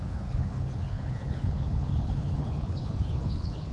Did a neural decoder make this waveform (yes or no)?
yes